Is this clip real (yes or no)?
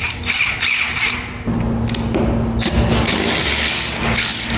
yes